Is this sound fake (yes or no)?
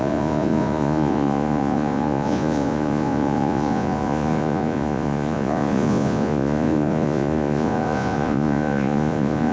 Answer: yes